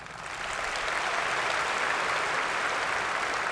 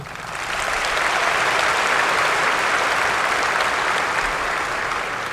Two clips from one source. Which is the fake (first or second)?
second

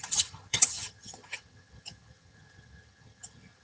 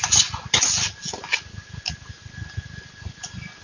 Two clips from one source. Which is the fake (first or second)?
first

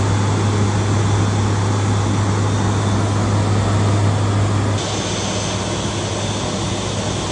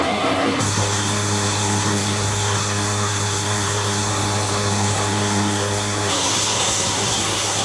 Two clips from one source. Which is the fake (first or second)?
second